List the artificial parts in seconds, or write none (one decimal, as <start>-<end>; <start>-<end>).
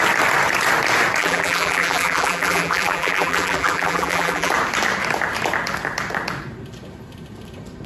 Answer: 1.2-4.5